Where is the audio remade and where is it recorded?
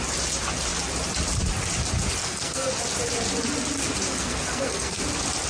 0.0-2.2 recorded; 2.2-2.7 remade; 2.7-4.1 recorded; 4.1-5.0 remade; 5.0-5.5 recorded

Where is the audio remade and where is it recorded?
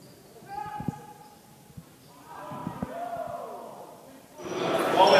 0.0-5.2 recorded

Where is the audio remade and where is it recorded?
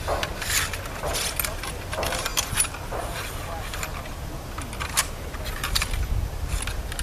0.0-7.0 recorded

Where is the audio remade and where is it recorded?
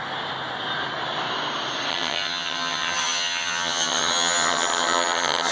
0.0-1.9 recorded; 1.9-5.5 remade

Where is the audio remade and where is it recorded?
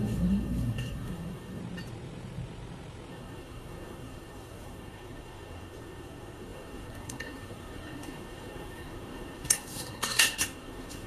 0.0-1.6 remade; 1.6-3.1 recorded; 3.1-11.1 remade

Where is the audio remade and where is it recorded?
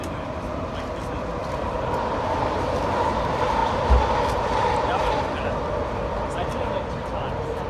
0.0-7.7 recorded